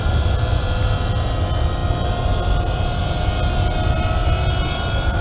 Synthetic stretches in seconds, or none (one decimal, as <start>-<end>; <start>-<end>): none